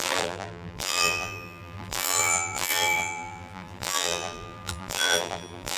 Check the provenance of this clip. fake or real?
fake